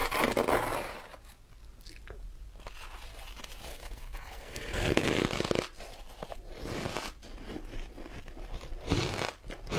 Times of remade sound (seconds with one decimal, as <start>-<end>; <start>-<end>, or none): 3.7-5.1